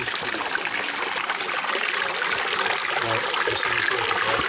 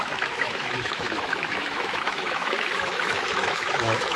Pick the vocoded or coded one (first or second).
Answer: second